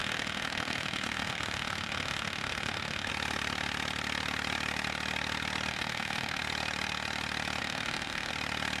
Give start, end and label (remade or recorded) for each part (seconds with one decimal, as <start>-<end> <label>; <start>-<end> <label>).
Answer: 0.0-3.1 remade; 3.1-5.7 recorded; 5.7-6.4 remade; 6.4-7.6 recorded; 7.6-8.3 remade; 8.3-8.8 recorded